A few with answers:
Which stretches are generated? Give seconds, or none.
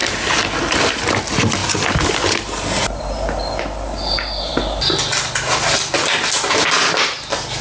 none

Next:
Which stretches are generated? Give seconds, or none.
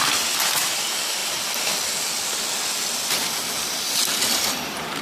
none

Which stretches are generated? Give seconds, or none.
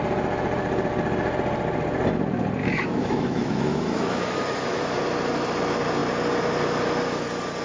2.6-4.8 (autoencoder, DAC-VAE)